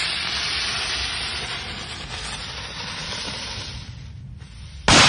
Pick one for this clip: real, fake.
real